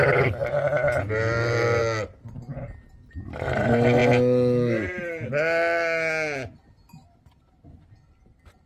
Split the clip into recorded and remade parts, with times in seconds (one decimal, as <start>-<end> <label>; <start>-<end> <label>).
0.0-8.7 recorded